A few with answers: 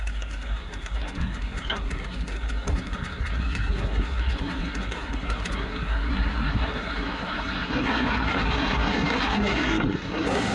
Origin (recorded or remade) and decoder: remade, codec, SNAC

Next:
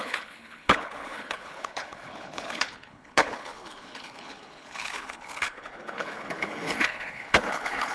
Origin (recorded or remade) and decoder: remade, codec, HILCodec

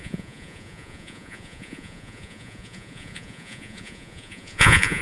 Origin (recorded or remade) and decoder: remade, vocoder, Vocos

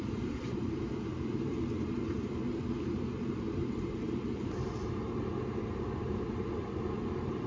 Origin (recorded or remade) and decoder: remade, vocoder, BigVGAN v2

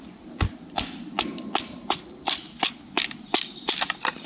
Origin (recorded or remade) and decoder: recorded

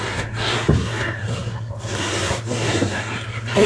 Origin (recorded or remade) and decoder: remade, codec, SNAC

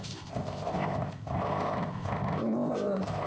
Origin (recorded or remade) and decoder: remade, codec, ZipCodec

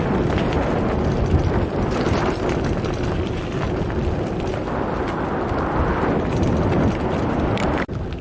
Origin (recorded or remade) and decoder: recorded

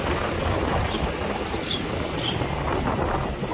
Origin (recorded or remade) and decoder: recorded